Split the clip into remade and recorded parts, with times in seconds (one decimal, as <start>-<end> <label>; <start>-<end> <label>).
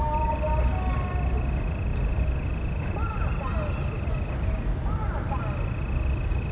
0.0-6.5 recorded